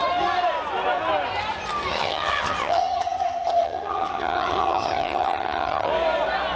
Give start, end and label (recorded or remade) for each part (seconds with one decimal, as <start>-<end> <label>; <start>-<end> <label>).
0.0-1.9 recorded; 1.9-5.9 remade; 5.9-6.6 recorded